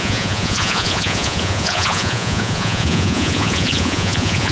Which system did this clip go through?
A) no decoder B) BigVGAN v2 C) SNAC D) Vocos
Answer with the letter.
D